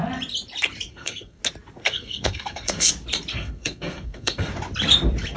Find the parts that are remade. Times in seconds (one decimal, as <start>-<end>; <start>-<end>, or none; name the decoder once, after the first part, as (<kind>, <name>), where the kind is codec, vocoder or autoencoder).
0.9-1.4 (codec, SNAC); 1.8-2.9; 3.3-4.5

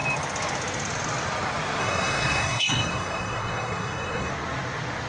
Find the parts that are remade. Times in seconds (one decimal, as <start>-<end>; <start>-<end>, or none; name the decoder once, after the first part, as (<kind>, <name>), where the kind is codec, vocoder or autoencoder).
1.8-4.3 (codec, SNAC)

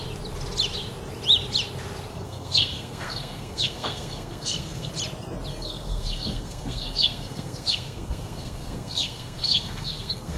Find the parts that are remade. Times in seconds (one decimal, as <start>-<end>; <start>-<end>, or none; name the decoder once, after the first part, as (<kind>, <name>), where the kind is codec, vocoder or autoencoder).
2.1-4.9 (codec, SNAC); 5.5-10.4

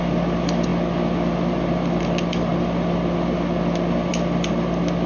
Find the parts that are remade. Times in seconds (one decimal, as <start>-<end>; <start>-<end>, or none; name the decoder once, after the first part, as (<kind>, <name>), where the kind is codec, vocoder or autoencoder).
none

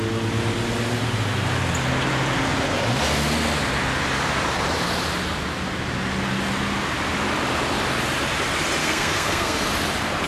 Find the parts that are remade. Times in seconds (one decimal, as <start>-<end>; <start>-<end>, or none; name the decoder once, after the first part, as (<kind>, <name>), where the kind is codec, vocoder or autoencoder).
8.8-9.6 (codec, SNAC)

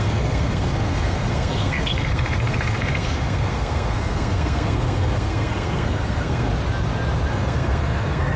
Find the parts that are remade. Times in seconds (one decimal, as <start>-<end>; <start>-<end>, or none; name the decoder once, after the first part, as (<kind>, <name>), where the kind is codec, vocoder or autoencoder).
0.0-6.5 (codec, SNAC); 7.3-8.4

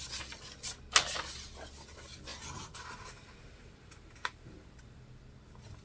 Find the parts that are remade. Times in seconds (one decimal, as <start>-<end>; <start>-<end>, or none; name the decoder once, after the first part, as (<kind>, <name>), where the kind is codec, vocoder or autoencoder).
none